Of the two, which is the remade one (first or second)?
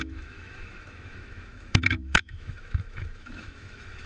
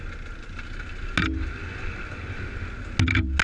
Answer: first